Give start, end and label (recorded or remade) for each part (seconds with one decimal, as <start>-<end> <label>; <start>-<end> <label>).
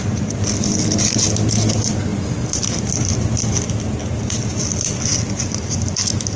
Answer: 0.0-6.4 recorded